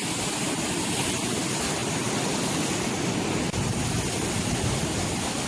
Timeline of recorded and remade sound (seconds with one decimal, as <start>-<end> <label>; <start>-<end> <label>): 0.0-5.5 recorded